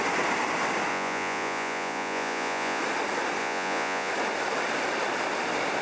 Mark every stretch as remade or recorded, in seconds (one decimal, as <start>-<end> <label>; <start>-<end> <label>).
0.0-0.9 recorded; 0.9-2.8 remade; 2.8-3.4 recorded; 3.4-4.1 remade; 4.1-5.8 recorded